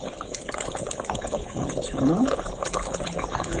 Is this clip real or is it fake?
fake